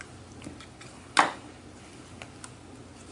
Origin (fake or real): real